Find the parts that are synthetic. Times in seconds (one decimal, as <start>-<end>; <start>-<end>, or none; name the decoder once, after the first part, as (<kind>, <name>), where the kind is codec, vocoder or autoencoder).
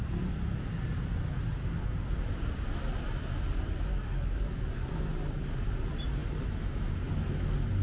3.9-4.9 (codec, DAC)